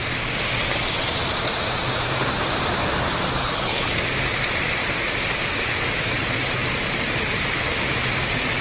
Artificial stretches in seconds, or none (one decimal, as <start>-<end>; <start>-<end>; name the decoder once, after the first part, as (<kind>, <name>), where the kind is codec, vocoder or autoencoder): 3.4-3.9 (codec, HILCodec)